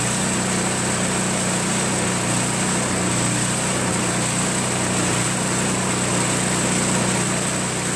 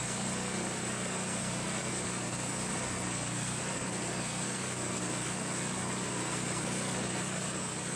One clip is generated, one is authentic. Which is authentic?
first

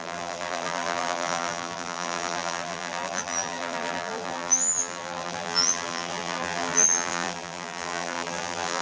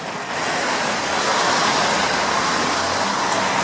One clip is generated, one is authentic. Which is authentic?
second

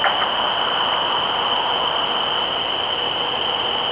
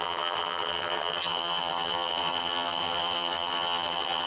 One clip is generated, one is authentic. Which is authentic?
first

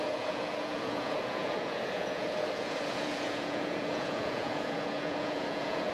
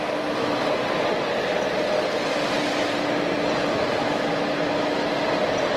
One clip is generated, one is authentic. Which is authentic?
second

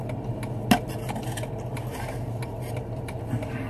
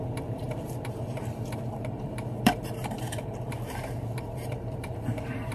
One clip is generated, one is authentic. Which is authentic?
first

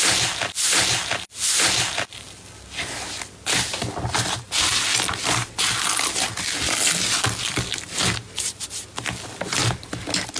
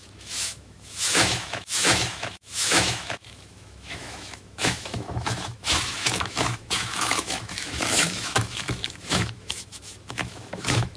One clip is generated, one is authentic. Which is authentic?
first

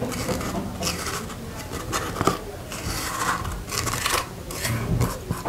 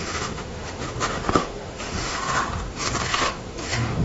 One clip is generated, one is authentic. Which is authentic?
first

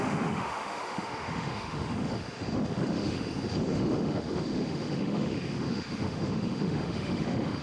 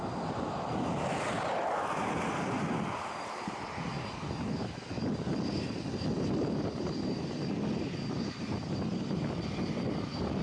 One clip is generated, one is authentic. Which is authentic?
second